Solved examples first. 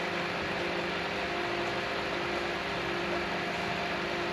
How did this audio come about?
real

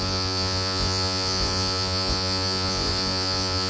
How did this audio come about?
fake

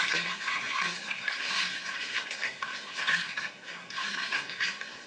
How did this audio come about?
fake